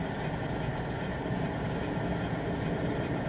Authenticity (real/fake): real